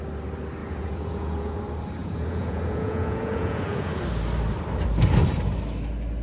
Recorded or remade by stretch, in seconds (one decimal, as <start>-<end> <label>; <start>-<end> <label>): 0.0-0.6 recorded; 0.6-1.6 remade; 1.6-2.0 recorded; 2.0-4.0 remade; 4.0-6.2 recorded